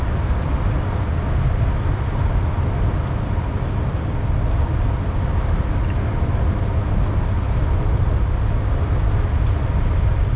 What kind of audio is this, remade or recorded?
recorded